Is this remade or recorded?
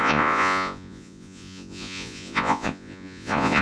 remade